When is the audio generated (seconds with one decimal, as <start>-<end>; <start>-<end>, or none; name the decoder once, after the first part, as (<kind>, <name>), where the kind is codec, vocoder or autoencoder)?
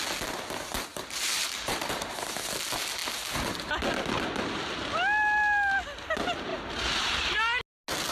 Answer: 0.9-2.5 (vocoder, BigVGAN v2); 6.5-7.3